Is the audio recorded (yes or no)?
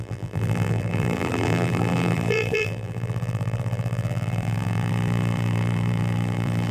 no